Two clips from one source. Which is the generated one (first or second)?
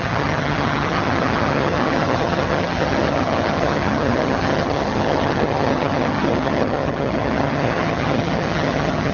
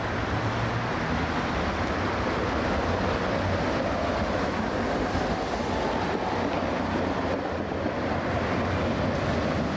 first